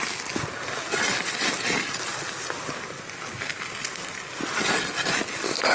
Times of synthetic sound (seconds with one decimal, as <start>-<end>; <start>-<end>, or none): none